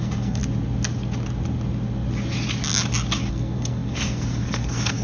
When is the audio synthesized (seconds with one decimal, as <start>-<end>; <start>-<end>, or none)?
0.0-0.4; 3.3-5.0